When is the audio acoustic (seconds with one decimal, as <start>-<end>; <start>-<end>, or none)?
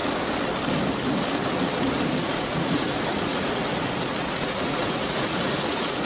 0.0-2.2; 3.6-4.3